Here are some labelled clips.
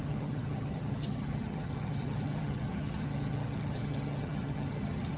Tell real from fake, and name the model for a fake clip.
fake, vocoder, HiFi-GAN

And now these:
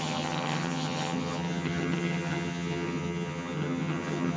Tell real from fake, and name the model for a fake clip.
fake, vocoder, HiFi-GAN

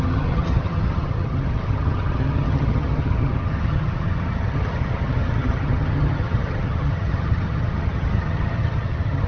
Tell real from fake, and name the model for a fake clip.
fake, vocoder, HiFi-GAN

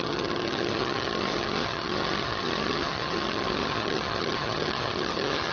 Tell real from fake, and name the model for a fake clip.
fake, vocoder, HiFi-GAN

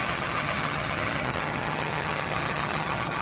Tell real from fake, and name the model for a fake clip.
fake, vocoder, HiFi-GAN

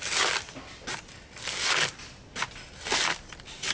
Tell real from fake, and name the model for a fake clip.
real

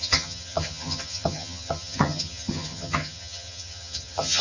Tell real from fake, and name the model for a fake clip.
fake, vocoder, HiFi-GAN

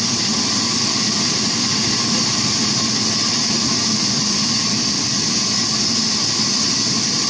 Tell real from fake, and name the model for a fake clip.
real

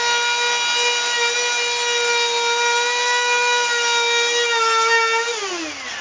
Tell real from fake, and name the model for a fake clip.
real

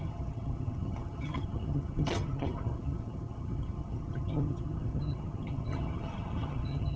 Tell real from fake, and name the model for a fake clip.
fake, vocoder, HiFi-GAN